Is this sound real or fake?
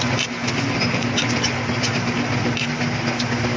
real